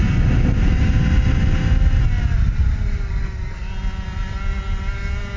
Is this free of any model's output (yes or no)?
yes